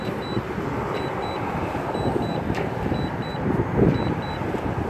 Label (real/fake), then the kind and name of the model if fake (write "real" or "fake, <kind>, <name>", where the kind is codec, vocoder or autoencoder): real